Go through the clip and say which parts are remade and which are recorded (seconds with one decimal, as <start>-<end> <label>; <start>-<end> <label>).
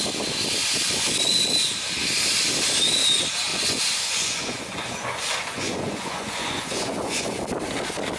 0.0-3.5 recorded; 3.5-7.4 remade; 7.4-8.2 recorded